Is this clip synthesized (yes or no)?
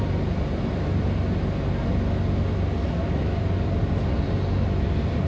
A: no